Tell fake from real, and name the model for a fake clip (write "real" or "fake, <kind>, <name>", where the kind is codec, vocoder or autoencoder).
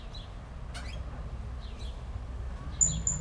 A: real